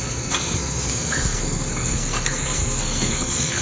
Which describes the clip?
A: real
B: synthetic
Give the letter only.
B